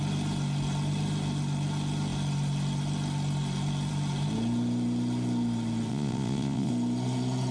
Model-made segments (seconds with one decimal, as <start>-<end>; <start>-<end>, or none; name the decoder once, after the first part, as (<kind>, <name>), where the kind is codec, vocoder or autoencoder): 5.9-6.7 (vocoder, Vocos)